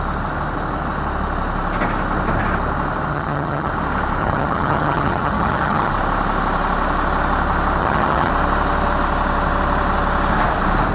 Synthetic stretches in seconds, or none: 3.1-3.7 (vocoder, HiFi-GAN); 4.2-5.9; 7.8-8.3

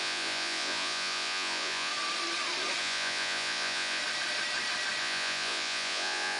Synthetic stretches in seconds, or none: 0.0-1.9 (vocoder, Vocos); 2.8-4.0; 5.0-6.4

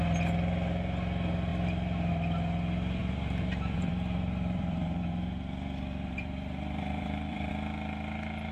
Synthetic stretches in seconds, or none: 3.0-7.5 (vocoder, BigVGAN v2)

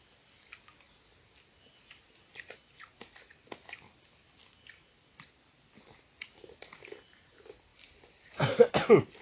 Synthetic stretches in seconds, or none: none

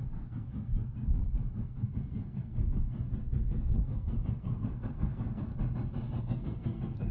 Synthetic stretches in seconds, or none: 0.0-5.5 (codec, SNAC); 6.2-7.1

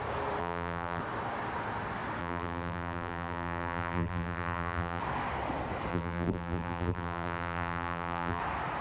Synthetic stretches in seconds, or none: 0.4-1.0 (vocoder, BigVGAN v2); 2.2-5.0; 5.9-8.4

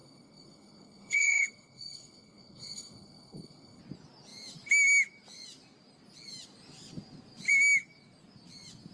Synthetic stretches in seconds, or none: 0.0-3.8 (codec, HILCodec)

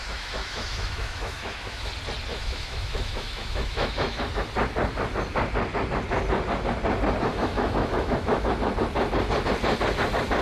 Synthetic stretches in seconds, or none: 0.0-1.9 (autoencoder, DAC-VAE); 2.3-4.2; 7.3-8.5